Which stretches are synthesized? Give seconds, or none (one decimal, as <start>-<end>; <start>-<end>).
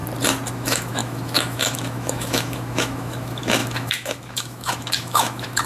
0.5-5.7